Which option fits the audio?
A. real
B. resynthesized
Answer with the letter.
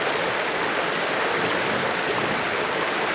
A